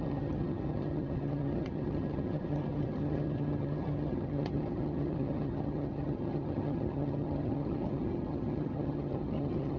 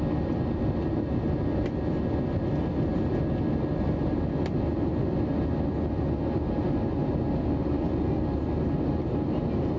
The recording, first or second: second